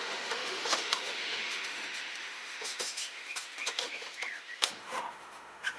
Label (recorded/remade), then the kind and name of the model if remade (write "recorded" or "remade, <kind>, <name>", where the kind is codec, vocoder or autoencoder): remade, autoencoder, DAC-VAE